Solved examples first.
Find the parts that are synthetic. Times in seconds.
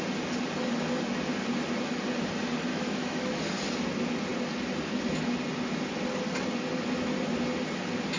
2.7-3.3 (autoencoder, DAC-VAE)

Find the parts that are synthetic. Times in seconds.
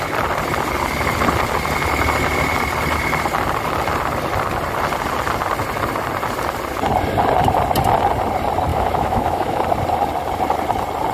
8.7-9.6 (autoencoder, DAC-VAE)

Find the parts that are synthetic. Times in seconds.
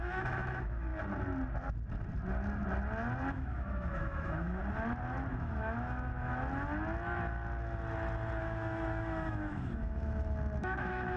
0.0-0.9 (autoencoder, DAC-VAE); 3.3-4.6; 5.3-6.1; 8.4-11.2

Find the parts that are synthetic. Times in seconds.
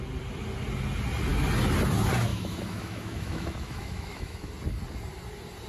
2.3-4.5 (autoencoder, DAC-VAE)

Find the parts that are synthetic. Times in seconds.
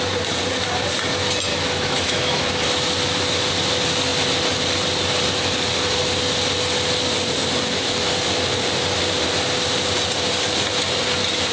1.5-2.4 (autoencoder, DAC-VAE)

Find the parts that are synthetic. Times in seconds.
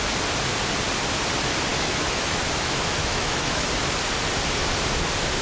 1.7-2.4 (autoencoder, DAC-VAE); 3.0-3.7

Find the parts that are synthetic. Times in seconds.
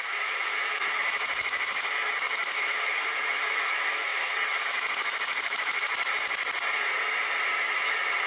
0.0-5.9 (autoencoder, DAC-VAE); 7.5-8.3